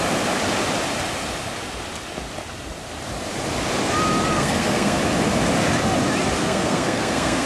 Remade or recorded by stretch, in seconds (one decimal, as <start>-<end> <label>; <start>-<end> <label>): 0.0-4.3 recorded; 4.3-5.0 remade; 5.0-6.4 recorded; 6.4-7.5 remade